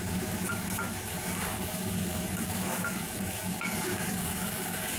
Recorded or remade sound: remade